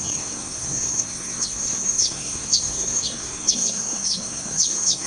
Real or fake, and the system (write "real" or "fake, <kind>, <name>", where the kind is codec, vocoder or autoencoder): fake, codec, SNAC